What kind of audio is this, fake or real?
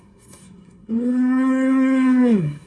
fake